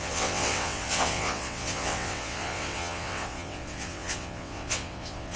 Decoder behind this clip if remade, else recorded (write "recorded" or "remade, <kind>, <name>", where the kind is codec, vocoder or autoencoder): remade, vocoder, WaveNeXt